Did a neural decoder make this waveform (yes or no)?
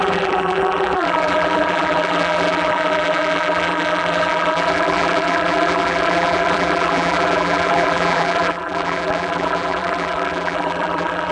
yes